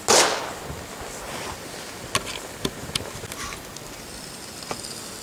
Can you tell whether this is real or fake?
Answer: real